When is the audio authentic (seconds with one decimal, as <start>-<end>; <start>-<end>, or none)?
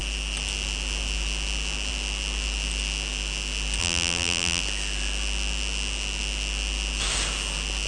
0.0-3.8; 4.6-7.9